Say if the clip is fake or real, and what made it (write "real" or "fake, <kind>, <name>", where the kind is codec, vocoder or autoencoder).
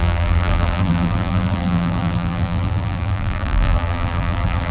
fake, vocoder, BigVGAN v2